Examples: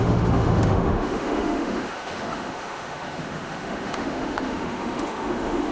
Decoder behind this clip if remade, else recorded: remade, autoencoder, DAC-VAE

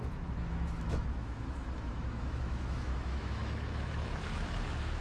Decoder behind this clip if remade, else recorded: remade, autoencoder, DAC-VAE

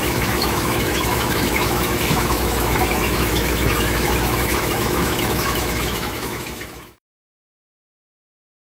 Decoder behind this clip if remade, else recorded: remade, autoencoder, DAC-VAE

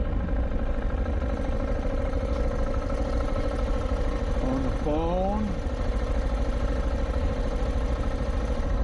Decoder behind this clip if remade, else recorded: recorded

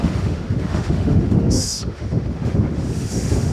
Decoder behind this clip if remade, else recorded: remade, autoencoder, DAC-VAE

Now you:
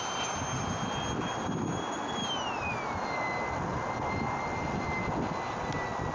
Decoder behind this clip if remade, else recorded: recorded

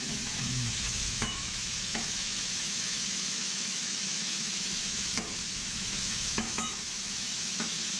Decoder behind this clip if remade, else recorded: remade, autoencoder, DAC-VAE